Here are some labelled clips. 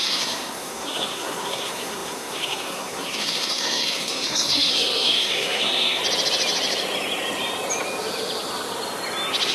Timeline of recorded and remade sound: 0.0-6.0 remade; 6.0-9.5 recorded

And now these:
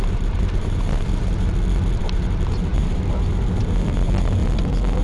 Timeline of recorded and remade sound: 0.0-1.5 remade; 1.5-2.0 recorded; 2.0-4.4 remade; 4.4-5.0 recorded